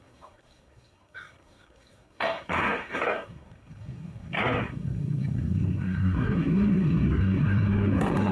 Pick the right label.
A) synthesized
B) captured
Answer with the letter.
A